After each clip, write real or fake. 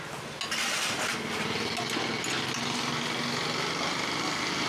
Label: real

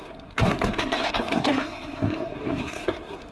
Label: fake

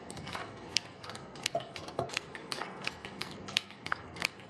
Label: fake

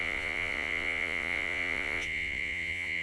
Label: fake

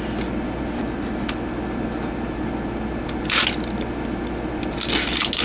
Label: real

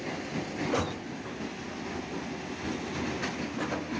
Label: real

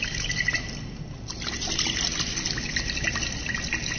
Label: real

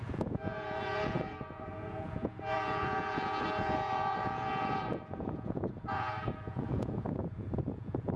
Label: fake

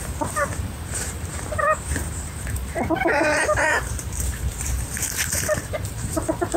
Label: fake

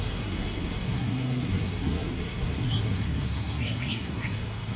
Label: fake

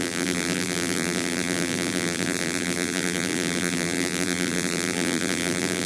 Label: fake